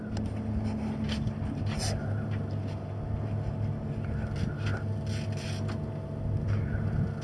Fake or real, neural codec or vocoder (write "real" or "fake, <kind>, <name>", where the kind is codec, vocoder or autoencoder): real